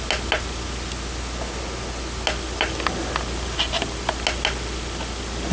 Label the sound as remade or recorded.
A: recorded